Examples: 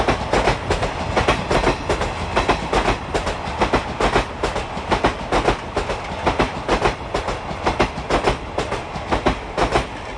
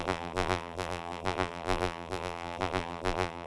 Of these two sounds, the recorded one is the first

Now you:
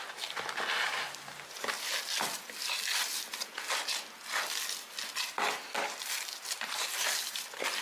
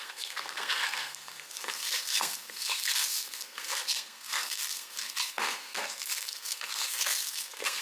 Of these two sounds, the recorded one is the first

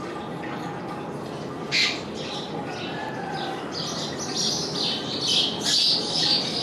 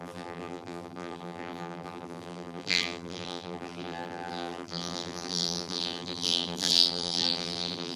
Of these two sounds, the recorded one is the first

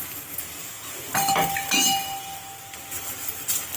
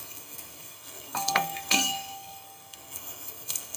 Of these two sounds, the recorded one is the first